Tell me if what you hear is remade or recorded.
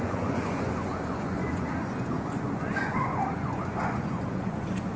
remade